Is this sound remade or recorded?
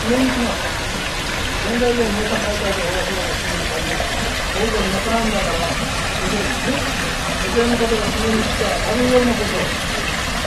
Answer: recorded